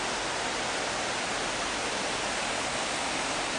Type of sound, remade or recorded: remade